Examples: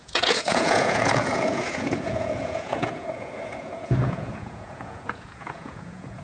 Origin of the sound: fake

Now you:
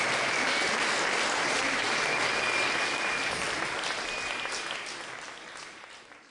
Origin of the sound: real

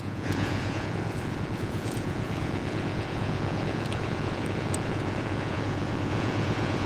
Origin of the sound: fake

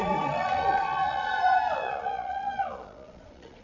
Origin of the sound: fake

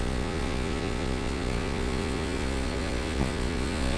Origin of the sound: fake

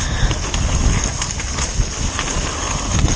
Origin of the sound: real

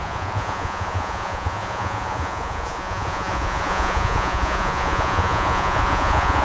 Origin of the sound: fake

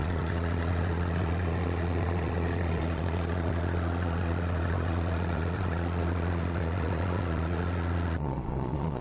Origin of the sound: fake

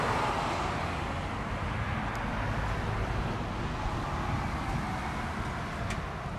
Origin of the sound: real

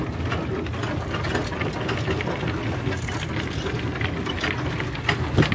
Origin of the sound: real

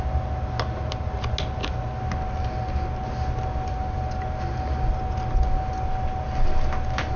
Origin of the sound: real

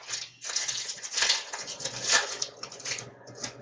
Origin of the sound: fake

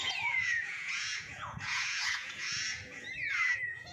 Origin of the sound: fake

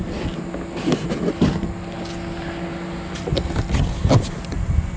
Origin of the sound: real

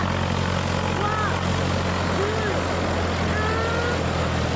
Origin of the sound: real